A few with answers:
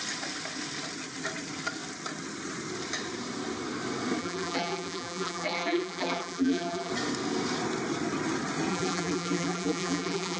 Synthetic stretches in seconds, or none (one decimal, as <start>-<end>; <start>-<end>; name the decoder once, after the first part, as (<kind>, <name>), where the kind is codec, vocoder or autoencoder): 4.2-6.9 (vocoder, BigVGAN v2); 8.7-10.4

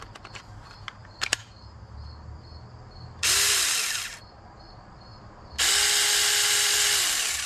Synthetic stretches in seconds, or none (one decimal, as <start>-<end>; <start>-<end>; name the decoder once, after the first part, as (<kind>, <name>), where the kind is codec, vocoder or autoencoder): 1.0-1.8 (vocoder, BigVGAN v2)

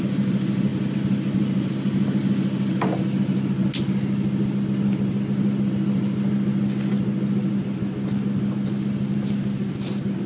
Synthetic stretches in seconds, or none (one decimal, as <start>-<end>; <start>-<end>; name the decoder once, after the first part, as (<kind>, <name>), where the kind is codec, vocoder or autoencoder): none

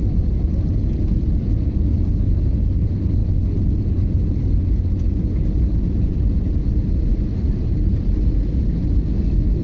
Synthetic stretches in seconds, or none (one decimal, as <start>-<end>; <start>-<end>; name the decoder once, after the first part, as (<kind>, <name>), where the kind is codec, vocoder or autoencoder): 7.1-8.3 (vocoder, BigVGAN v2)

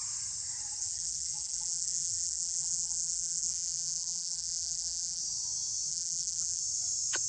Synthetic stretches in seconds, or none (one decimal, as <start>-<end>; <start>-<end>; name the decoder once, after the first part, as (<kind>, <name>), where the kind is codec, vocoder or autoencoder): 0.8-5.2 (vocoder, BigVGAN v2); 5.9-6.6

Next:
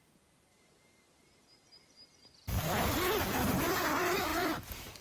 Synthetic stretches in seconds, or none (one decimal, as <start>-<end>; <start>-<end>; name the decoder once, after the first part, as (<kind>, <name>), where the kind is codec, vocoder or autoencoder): 0.0-0.5 (vocoder, BigVGAN v2); 3.5-5.0

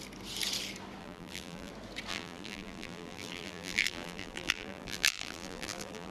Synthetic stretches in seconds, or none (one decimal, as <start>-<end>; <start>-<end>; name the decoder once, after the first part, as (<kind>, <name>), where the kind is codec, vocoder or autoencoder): 1.0-1.7 (vocoder, BigVGAN v2); 2.1-6.1